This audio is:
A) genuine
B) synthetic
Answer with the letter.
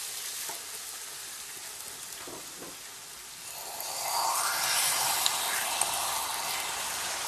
A